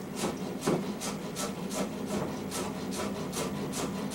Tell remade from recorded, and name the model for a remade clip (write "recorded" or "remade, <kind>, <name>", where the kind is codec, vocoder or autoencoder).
recorded